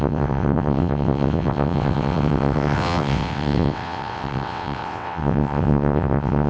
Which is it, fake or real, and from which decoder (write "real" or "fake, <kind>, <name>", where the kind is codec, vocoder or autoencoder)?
fake, vocoder, WaveNeXt